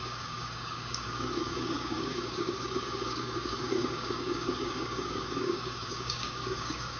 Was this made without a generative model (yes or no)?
no